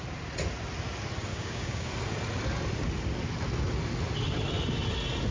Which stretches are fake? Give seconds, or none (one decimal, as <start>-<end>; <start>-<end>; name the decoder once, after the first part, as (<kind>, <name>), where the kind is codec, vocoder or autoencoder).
1.3-1.9 (codec, DAC)